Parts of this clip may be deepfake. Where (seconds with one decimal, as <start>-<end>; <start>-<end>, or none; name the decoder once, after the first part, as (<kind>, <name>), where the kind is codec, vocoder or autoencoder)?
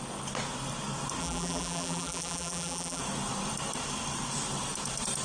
1.2-3.0 (vocoder, BigVGAN v2)